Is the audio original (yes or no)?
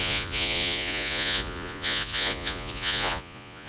no